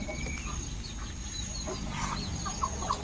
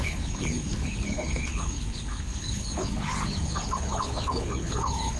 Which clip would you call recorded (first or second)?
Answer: first